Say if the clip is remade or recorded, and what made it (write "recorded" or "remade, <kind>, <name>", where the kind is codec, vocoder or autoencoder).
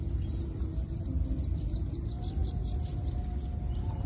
recorded